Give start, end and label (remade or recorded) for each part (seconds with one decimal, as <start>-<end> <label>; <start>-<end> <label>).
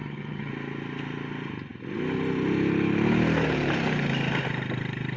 0.0-0.5 remade; 0.5-5.2 recorded